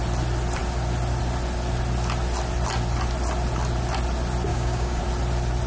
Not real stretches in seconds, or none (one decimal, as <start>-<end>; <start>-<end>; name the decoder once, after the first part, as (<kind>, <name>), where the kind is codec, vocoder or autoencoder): 4.5-5.0 (codec, DAC)